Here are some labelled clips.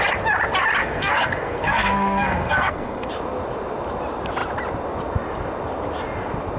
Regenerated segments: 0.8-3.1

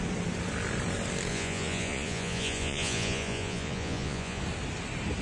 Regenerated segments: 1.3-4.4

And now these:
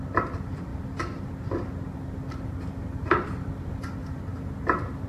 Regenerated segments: none

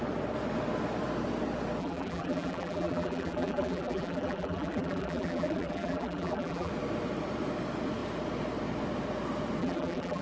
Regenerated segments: 1.8-6.7; 9.6-10.2

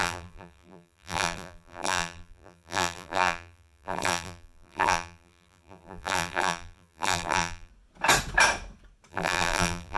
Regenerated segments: 0.0-7.7; 9.1-10.0